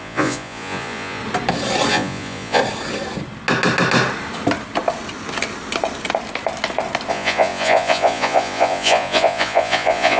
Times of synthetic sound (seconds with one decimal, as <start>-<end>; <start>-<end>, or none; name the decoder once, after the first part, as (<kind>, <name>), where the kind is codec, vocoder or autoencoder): 0.0-1.2 (vocoder, Vocos); 1.9-2.6; 7.1-10.2